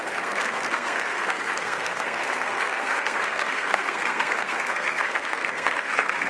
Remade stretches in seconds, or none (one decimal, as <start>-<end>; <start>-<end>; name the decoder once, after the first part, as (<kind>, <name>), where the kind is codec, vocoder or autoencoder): 0.0-6.3 (codec, SNAC)